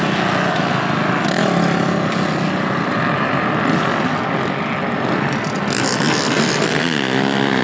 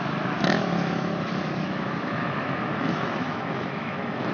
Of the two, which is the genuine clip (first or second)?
first